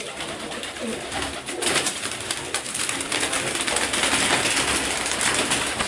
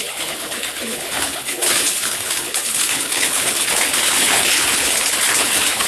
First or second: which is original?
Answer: first